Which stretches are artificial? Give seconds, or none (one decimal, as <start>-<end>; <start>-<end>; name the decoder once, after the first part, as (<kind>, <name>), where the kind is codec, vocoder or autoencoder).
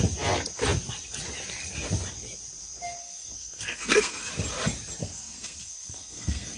3.0-4.3 (codec, SNAC); 5.0-6.6